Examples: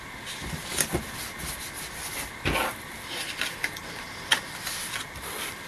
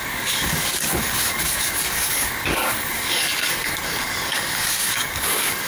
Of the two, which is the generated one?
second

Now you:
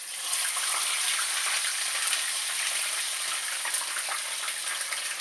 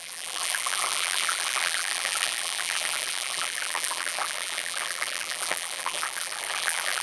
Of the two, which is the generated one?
second